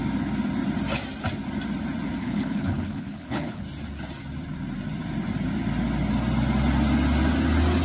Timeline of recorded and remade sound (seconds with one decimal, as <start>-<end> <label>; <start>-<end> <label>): 0.0-2.2 recorded; 2.2-3.6 remade; 3.6-7.8 recorded